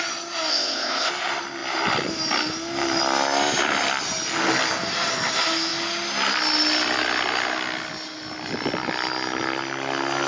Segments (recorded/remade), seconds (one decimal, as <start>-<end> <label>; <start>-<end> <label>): 0.0-0.5 recorded; 0.5-1.1 remade; 1.1-10.3 recorded